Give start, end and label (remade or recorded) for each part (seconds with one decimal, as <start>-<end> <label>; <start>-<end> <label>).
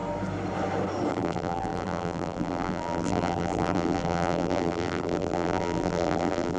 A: 0.0-1.1 recorded; 1.1-6.6 remade